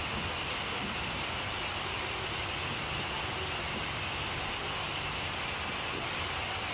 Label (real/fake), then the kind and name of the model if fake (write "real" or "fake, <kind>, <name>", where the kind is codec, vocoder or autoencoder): real